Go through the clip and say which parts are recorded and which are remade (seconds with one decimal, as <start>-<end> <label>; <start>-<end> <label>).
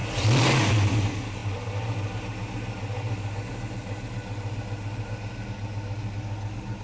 0.0-6.8 recorded